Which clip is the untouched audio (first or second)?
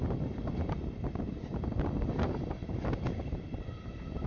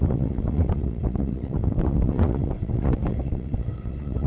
first